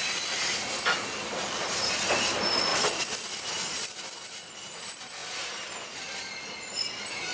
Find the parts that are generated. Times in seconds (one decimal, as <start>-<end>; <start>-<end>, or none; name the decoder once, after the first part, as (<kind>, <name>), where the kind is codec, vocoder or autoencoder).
0.0-0.6 (vocoder, BigVGAN v2); 2.7-3.5